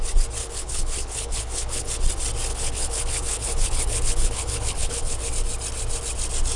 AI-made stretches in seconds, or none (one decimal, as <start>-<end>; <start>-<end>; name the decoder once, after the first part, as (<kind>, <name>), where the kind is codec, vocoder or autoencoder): 0.4-1.9 (codec, HILCodec); 2.5-5.3